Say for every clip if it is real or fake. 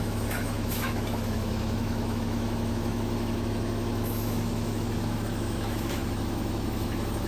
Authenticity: fake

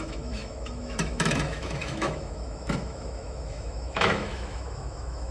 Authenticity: fake